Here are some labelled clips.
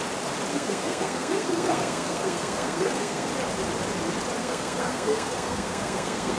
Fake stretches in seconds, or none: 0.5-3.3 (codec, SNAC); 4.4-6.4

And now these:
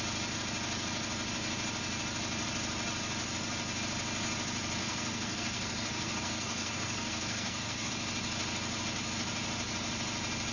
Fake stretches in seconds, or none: 4.8-7.9 (codec, SNAC)

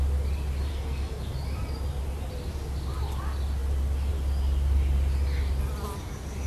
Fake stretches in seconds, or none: 0.7-1.2 (codec, SNAC)